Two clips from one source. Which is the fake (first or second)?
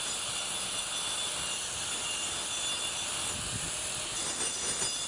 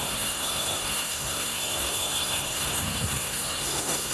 second